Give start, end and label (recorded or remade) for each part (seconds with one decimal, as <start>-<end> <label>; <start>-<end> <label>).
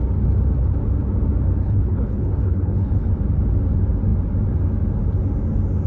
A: 0.0-1.6 recorded; 1.6-3.1 remade; 3.1-5.9 recorded